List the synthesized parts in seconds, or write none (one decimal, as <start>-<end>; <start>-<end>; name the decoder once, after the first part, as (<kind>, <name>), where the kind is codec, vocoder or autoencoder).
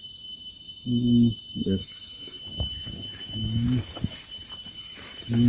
1.6-4.2 (autoencoder, DAC-VAE)